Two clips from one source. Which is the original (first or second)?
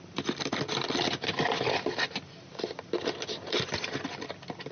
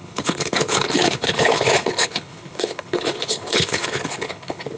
first